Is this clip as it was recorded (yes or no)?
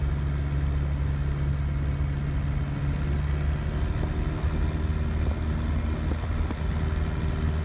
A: yes